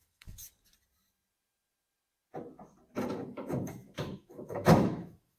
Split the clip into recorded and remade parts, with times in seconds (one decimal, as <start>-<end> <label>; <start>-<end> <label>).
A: 0.0-0.4 remade; 0.4-3.1 recorded; 3.1-5.4 remade